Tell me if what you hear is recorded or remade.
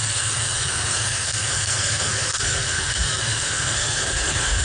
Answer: remade